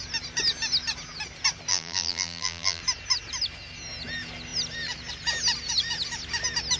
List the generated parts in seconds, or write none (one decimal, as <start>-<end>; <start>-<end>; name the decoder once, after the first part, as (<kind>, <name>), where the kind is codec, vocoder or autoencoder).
1.7-2.8 (vocoder, BigVGAN v2)